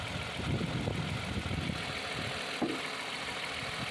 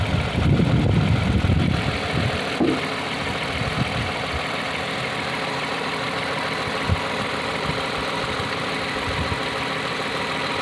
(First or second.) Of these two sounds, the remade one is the second